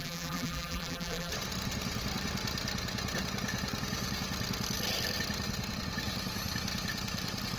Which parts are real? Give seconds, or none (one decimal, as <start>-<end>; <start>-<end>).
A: 1.3-7.6